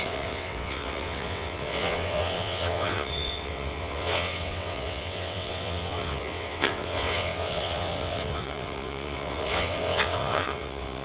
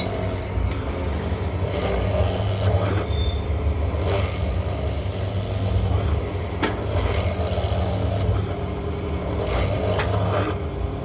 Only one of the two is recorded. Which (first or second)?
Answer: second